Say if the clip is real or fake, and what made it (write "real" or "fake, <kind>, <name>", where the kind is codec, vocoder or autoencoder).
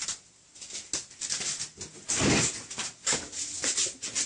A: real